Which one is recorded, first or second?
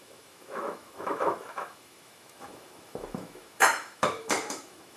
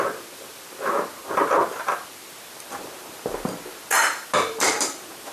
second